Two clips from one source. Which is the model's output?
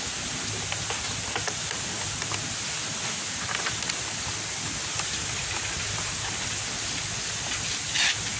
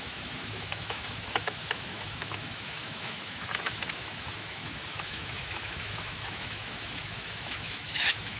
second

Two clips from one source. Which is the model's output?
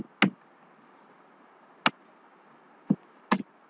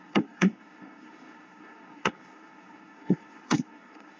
second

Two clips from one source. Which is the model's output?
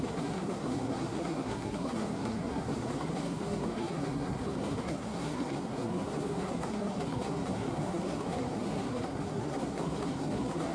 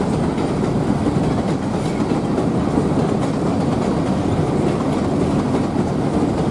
first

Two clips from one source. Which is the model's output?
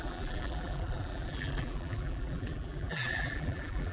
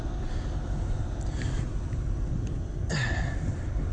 first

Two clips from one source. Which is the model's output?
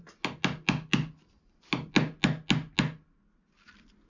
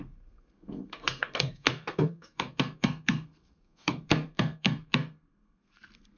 second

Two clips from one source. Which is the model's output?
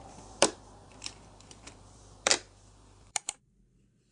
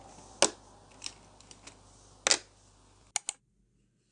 first